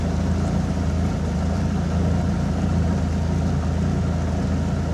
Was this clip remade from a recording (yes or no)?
no